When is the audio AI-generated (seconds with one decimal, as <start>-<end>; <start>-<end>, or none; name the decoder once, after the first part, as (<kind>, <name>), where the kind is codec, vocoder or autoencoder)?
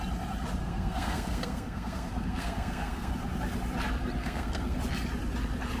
0.6-3.1 (codec, SNAC); 4.2-4.8